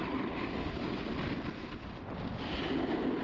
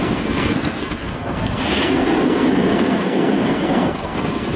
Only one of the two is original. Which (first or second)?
first